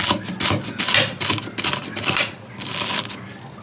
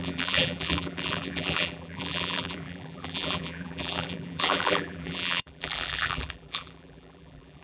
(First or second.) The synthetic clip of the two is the second